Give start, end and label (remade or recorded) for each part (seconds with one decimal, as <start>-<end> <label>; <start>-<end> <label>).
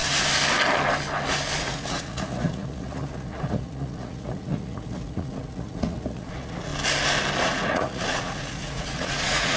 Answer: 0.0-1.6 recorded; 1.6-6.7 remade; 6.7-7.4 recorded; 7.4-9.6 remade